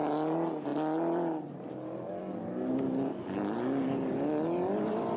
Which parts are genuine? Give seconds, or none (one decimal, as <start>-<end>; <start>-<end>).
0.0-5.2